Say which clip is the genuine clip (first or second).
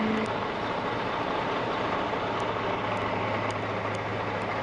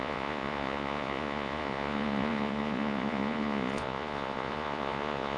first